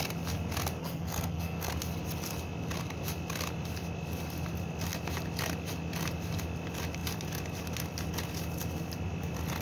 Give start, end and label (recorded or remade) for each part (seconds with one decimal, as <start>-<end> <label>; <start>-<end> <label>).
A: 0.0-0.8 recorded; 0.8-1.7 remade; 1.7-9.6 recorded